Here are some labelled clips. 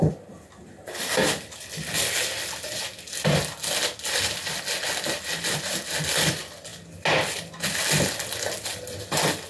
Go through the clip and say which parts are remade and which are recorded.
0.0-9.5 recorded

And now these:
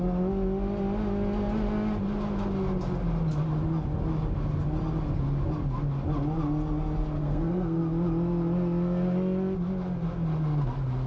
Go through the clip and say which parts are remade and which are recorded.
0.0-7.2 recorded; 7.2-7.8 remade; 7.8-11.1 recorded